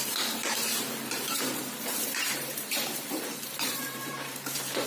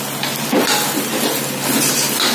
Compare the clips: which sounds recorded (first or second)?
second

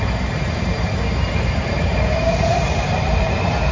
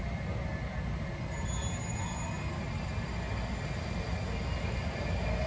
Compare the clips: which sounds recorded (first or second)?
second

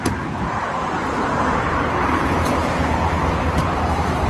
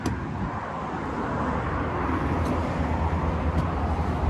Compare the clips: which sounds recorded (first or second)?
second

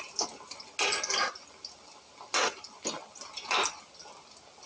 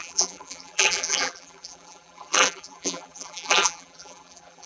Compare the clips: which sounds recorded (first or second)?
first